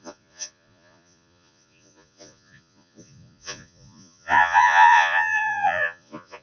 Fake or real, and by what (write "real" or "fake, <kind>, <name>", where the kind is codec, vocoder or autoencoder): fake, vocoder, Vocos